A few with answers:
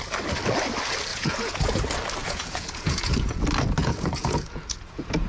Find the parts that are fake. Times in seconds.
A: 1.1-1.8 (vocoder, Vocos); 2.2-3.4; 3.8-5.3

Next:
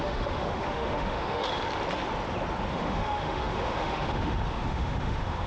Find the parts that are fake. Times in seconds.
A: 0.0-1.5 (autoencoder, DAC-VAE); 2.7-5.5

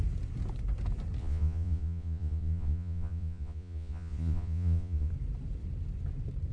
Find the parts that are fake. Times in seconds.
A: 1.2-5.1 (vocoder, Vocos)

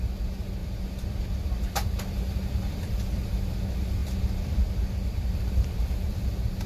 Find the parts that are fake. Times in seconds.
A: 0.6-3.6 (vocoder, BigVGAN v2); 4.0-6.1